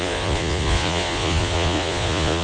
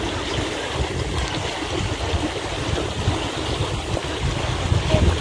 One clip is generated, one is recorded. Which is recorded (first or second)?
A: second